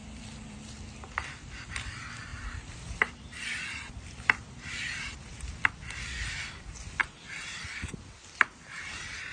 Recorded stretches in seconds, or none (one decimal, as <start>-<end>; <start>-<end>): 0.8-2.3; 5.7-7.0; 8.7-9.3